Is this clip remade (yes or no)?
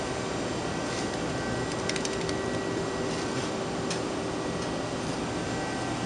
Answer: no